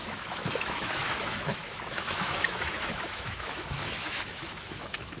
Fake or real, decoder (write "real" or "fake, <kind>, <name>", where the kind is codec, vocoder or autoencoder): fake, autoencoder, DAC-VAE